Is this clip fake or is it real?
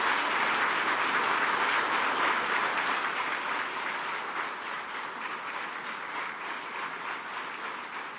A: real